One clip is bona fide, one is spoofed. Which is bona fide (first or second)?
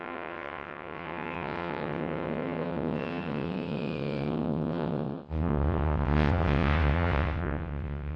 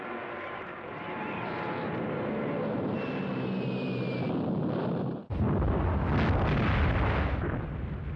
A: second